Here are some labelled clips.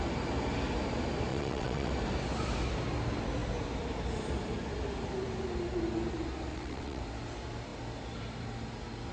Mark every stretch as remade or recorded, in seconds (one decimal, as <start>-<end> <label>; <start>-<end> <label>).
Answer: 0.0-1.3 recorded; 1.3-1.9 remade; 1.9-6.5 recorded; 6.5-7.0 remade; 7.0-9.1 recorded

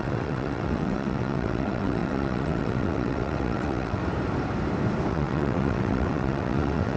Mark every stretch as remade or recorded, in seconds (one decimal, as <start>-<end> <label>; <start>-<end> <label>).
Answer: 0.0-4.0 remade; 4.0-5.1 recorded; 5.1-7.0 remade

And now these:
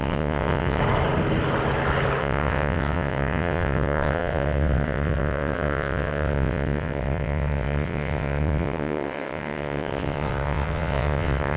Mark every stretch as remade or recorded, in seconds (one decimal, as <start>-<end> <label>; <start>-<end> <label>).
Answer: 0.0-0.8 remade; 0.8-2.2 recorded; 2.2-11.6 remade